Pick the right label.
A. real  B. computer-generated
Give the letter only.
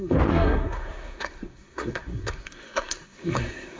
B